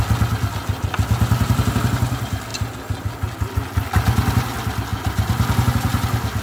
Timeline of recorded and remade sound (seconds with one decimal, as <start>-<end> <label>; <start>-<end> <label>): 0.0-6.4 recorded